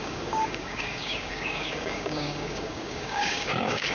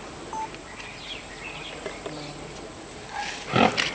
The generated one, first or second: first